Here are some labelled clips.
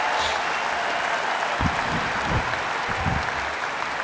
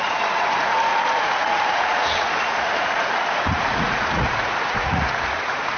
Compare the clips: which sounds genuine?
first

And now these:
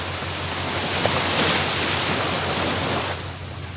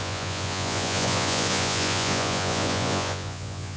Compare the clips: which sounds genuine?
first